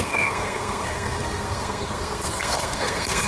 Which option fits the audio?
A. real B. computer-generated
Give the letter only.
B